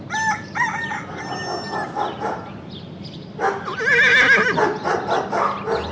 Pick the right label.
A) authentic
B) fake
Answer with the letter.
A